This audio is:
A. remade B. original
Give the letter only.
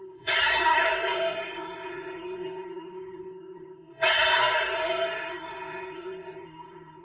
A